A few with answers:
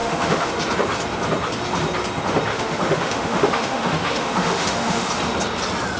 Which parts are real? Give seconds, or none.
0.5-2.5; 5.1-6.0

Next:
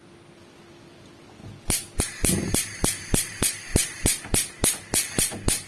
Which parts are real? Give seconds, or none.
0.0-5.7